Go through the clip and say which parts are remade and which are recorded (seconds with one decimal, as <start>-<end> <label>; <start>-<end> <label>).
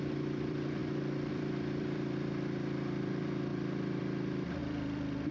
0.0-0.8 remade; 0.8-1.3 recorded; 1.3-5.3 remade